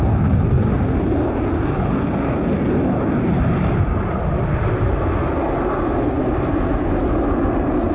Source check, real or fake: real